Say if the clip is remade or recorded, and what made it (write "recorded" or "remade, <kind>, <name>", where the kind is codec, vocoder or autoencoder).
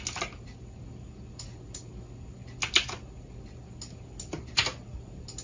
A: recorded